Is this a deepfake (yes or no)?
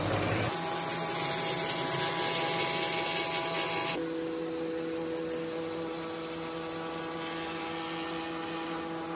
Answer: no